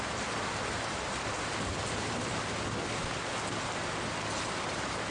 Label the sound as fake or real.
real